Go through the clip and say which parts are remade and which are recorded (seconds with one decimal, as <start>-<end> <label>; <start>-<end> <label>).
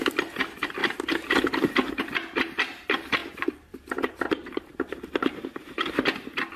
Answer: 0.0-3.2 recorded; 3.2-5.9 remade; 5.9-6.6 recorded